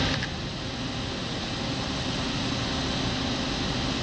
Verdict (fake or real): real